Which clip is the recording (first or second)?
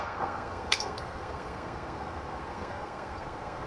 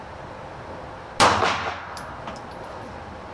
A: second